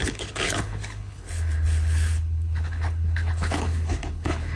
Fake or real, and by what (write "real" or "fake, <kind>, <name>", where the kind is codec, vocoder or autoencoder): fake, codec, HILCodec